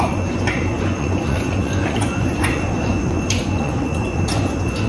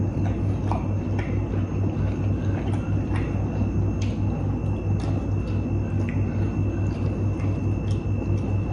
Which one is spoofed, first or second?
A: first